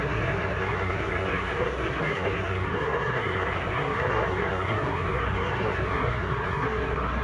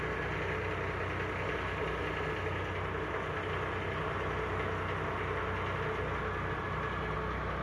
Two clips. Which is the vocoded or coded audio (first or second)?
first